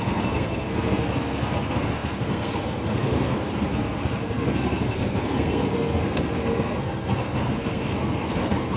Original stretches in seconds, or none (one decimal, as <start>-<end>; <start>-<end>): none